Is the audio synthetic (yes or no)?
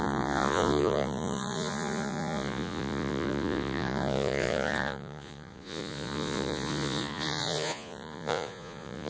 yes